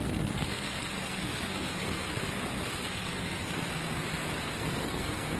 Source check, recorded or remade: remade